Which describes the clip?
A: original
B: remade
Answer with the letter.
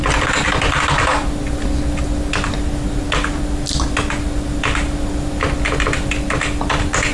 A